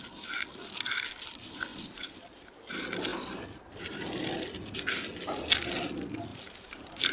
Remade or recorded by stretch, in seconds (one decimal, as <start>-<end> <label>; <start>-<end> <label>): 0.0-1.7 recorded; 1.7-2.7 remade; 2.7-3.1 recorded; 3.1-4.1 remade; 4.1-6.3 recorded; 6.3-7.1 remade